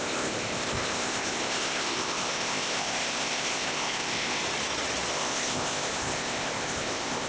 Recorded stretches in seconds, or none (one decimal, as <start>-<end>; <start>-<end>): 4.4-5.1